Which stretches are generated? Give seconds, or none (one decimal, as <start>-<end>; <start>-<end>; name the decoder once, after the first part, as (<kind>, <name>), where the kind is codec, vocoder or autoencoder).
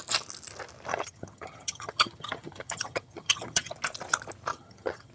0.9-3.7 (vocoder, HiFi-GAN); 4.5-5.1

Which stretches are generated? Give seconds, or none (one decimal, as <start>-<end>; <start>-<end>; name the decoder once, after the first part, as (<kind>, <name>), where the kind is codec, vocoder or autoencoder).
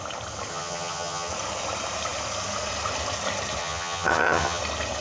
0.5-1.3 (vocoder, HiFi-GAN); 3.6-4.6